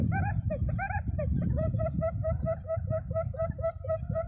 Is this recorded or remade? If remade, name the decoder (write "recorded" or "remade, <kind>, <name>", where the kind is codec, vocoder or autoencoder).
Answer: remade, vocoder, BigVGAN v2